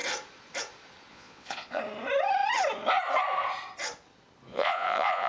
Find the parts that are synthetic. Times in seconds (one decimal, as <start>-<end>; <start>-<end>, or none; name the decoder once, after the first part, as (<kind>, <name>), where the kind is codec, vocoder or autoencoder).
1.1-1.8 (vocoder, Vocos); 4.5-5.3